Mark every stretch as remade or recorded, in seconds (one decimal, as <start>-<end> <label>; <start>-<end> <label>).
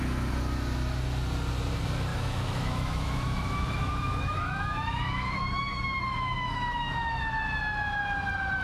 0.0-2.1 recorded; 2.1-7.2 remade; 7.2-8.6 recorded